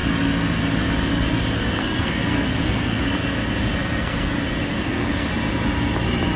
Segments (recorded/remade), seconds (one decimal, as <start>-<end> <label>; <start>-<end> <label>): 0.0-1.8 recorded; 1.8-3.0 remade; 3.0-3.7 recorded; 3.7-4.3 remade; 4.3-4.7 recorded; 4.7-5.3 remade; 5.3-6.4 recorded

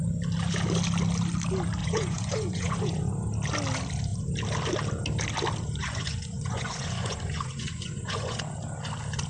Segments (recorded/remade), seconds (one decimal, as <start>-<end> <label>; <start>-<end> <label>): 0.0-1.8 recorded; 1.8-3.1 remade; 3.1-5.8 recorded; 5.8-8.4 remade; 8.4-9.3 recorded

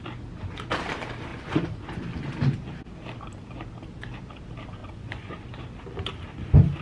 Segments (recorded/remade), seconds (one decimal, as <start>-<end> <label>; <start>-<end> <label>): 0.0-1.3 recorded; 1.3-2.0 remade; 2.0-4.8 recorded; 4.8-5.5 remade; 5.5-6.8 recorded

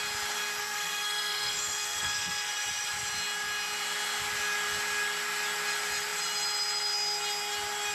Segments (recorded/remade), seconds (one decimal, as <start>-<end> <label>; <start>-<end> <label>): 0.0-0.6 recorded; 0.6-2.5 remade; 2.5-7.9 recorded

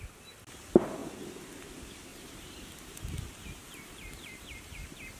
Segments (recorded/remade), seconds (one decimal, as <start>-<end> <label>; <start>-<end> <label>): 0.0-2.1 recorded; 2.1-5.2 remade

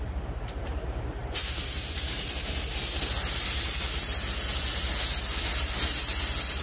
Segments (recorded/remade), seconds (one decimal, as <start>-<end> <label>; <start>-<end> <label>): 0.0-1.2 recorded; 1.2-2.3 remade; 2.3-6.6 recorded

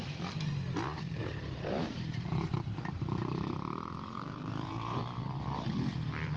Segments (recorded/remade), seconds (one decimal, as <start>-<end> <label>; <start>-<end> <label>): 0.0-1.2 recorded; 1.2-5.0 remade; 5.0-6.4 recorded